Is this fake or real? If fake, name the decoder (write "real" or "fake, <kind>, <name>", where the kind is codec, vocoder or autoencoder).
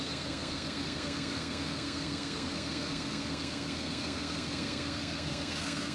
fake, codec, SNAC